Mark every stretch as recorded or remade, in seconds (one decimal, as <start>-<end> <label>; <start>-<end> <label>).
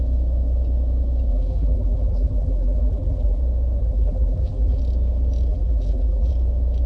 0.0-1.3 recorded; 1.3-3.4 remade; 3.4-3.8 recorded; 3.8-4.8 remade; 4.8-5.5 recorded; 5.5-6.3 remade; 6.3-6.9 recorded